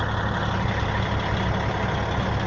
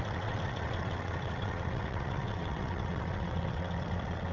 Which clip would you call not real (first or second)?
second